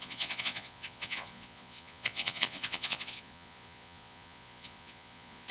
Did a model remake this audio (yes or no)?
yes